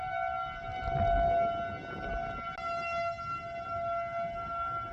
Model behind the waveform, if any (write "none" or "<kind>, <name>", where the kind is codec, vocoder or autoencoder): none